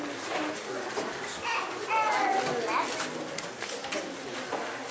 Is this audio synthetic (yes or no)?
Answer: no